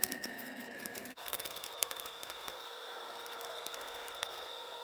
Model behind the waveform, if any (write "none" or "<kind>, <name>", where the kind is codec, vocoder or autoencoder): codec, SNAC